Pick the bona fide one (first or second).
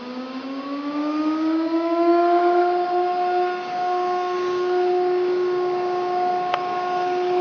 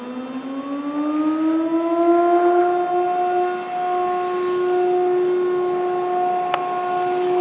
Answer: second